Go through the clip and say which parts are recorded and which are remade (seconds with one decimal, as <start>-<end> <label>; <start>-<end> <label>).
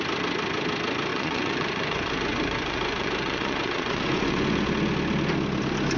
0.0-1.1 recorded; 1.1-4.7 remade; 4.7-6.0 recorded